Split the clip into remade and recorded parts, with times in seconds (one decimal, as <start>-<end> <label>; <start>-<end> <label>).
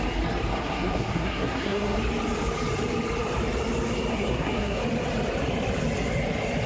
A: 0.0-0.5 recorded; 0.5-2.0 remade; 2.0-4.1 recorded; 4.1-4.8 remade; 4.8-6.7 recorded